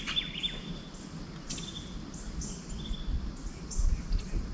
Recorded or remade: recorded